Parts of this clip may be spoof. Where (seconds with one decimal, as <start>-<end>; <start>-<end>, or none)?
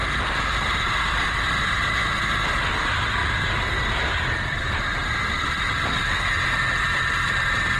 0.0-3.2; 4.1-5.0; 6.8-7.8